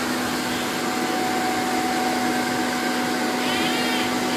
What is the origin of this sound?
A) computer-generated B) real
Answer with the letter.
B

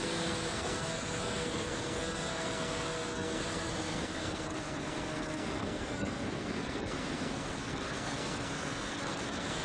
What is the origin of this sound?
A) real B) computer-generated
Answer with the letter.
B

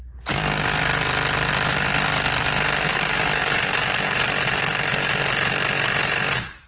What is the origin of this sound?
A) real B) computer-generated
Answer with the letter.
A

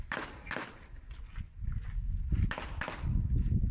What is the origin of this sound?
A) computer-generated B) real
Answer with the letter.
B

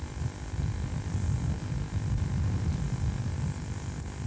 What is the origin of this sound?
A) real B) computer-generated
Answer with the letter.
B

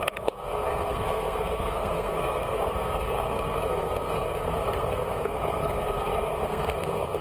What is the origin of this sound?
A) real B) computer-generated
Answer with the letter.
B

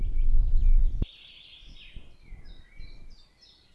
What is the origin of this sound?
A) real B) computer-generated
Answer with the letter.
A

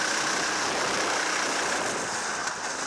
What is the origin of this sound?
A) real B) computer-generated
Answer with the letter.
A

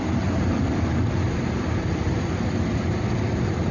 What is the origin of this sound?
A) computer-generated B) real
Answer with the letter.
A